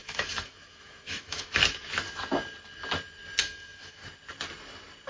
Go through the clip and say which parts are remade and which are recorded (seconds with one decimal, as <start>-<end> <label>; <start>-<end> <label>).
0.0-1.6 remade; 1.6-3.4 recorded; 3.4-4.0 remade; 4.0-5.1 recorded